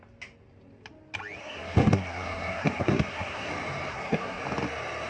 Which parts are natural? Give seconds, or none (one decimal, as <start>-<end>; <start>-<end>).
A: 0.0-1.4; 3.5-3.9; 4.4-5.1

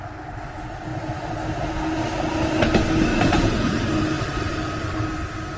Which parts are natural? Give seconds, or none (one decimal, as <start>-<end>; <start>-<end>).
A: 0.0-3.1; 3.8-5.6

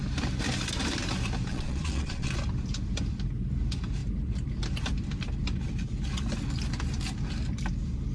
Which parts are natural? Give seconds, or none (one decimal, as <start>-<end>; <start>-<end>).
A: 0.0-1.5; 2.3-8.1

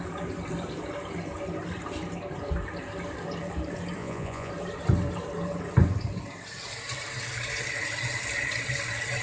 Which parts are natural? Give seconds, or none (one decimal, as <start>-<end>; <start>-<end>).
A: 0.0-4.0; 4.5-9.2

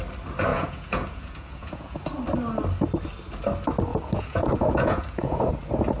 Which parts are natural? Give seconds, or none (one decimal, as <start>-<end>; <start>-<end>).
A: 0.0-0.5; 2.0-3.9; 5.5-6.0

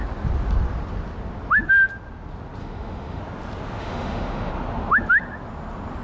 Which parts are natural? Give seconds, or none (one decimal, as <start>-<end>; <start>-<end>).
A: 0.0-2.6; 3.2-3.8; 4.5-6.0

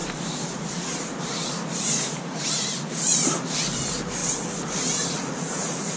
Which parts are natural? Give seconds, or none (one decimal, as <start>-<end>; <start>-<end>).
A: 1.2-6.0

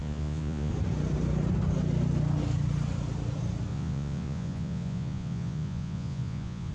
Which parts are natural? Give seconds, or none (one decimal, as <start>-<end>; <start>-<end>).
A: 0.7-3.7